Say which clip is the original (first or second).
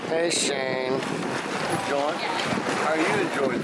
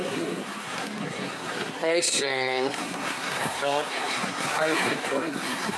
first